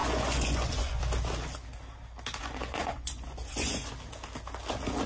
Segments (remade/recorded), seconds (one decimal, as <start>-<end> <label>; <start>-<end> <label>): 0.0-1.0 remade; 1.0-2.4 recorded; 2.4-3.9 remade; 3.9-5.1 recorded